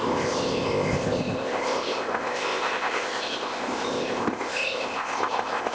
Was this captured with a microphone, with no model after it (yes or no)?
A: no